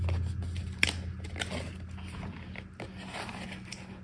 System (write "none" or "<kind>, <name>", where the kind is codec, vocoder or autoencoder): none